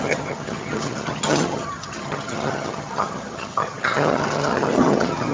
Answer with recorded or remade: remade